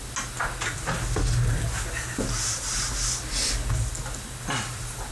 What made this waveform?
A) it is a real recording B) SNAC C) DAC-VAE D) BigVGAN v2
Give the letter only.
A